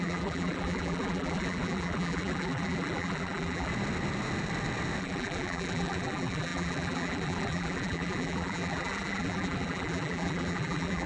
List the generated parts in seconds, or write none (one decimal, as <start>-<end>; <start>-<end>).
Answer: 0.0-3.7; 5.0-11.1